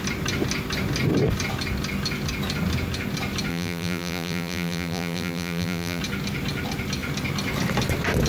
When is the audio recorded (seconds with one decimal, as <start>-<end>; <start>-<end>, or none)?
0.0-3.5; 6.0-8.3